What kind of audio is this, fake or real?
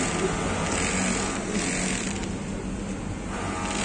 real